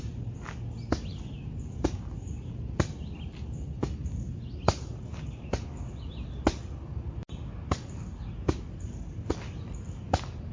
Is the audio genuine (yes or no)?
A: yes